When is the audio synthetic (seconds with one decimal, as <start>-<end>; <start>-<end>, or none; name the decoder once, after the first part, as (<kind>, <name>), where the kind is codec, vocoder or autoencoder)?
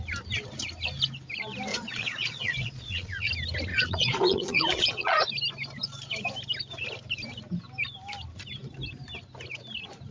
1.7-3.3 (vocoder, Vocos); 3.7-5.3